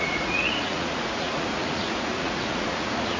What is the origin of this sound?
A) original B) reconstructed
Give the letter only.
B